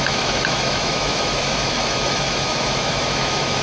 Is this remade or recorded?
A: remade